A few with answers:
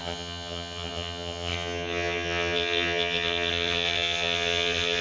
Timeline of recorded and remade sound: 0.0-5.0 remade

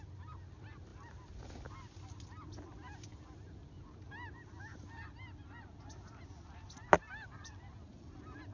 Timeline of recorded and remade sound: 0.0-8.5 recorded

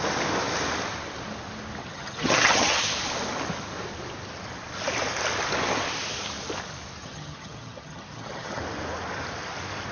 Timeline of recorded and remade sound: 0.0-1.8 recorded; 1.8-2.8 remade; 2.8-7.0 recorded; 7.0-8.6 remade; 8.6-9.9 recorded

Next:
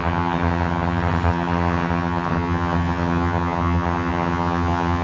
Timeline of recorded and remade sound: 0.0-5.0 remade

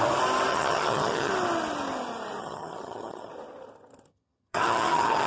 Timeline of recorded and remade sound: 0.0-0.5 recorded; 0.5-1.3 remade; 1.3-2.4 recorded; 2.4-3.3 remade; 3.3-4.1 recorded; 4.1-5.3 remade

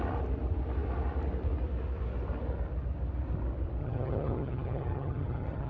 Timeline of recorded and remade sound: 0.0-3.8 recorded; 3.8-5.7 remade

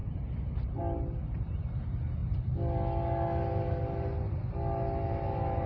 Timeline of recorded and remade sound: 0.0-5.7 recorded

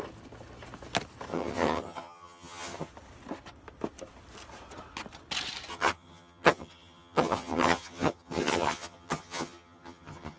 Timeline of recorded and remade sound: 0.0-1.3 recorded; 1.3-2.9 remade; 2.9-5.7 recorded; 5.7-10.4 remade